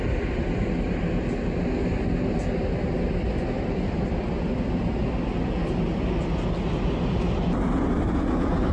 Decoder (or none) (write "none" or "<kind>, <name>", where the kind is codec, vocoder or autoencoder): none